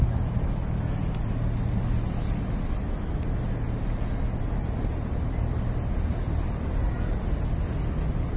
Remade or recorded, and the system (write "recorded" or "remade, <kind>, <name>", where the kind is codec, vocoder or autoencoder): recorded